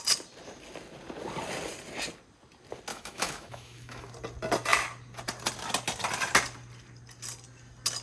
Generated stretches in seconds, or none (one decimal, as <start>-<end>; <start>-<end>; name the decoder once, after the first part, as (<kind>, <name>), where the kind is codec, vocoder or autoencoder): 2.9-4.1 (autoencoder, DAC-VAE)